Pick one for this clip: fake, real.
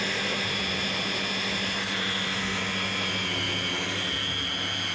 real